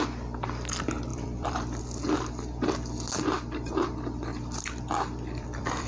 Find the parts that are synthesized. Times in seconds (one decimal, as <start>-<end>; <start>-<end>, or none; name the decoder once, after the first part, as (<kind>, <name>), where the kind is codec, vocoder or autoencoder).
1.1-1.8 (vocoder, BigVGAN v2); 4.3-5.9